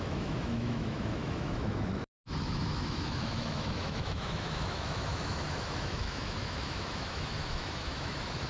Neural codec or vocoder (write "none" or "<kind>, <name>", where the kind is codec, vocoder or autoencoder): autoencoder, DAC-VAE